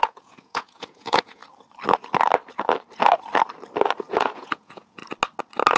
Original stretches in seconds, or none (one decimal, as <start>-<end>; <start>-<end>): 1.4-4.1; 5.0-5.8